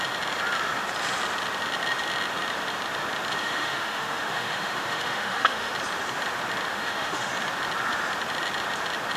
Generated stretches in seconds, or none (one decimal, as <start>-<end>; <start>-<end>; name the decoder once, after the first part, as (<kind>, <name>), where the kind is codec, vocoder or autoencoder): 3.4-5.7 (autoencoder, DAC-VAE); 6.7-7.3